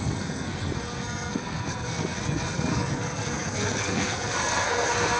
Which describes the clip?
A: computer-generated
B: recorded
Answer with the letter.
A